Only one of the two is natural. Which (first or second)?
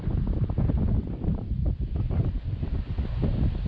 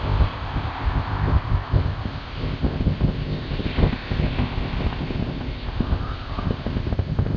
first